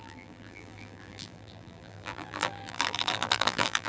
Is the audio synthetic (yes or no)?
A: yes